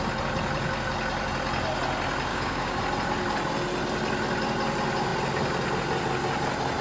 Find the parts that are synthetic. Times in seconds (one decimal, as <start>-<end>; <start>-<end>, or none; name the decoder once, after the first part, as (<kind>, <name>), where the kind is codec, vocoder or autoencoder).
2.3-2.8 (codec, DAC)